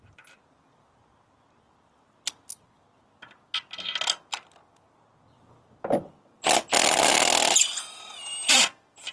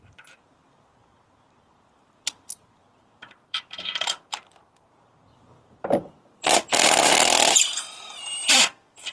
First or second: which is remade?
second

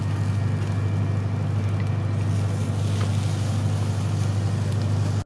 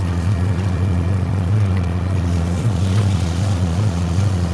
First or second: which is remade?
second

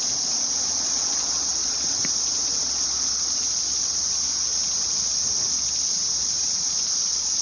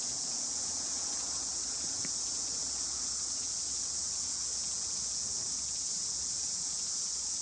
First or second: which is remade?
second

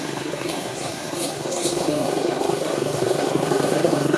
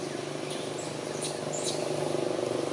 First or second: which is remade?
first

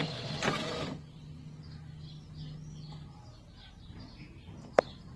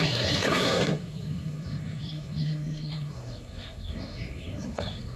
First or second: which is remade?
second